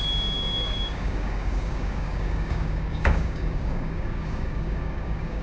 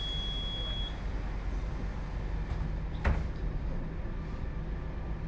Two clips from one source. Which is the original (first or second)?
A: second